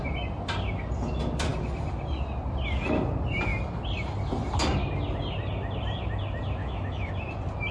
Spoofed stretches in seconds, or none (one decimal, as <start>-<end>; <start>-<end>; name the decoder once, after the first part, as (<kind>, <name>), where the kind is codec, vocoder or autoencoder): 6.6-7.1 (autoencoder, DAC-VAE)